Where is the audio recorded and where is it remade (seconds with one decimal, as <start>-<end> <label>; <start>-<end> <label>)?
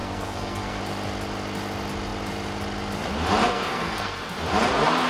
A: 0.0-0.8 remade; 0.8-3.4 recorded; 3.4-4.2 remade; 4.2-5.1 recorded